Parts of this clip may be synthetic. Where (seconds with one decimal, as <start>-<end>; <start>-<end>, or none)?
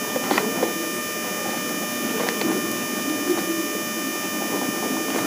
none